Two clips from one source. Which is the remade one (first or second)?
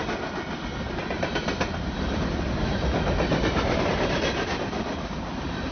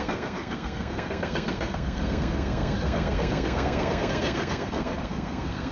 second